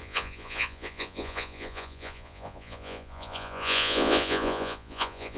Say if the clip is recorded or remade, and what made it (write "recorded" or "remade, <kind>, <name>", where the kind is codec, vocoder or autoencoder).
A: remade, vocoder, Vocos